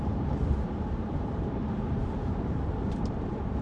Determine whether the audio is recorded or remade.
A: remade